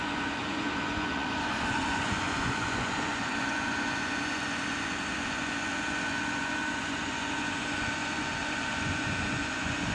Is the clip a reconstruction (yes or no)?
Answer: yes